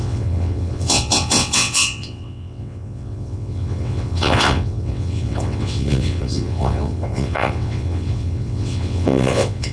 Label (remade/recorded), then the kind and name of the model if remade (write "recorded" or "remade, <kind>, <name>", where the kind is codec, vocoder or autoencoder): remade, vocoder, WaveNeXt